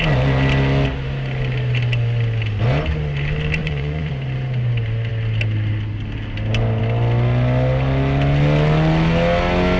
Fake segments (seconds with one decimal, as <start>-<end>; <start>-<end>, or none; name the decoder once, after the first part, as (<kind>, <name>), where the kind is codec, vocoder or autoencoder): 3.6-4.1 (vocoder, Vocos)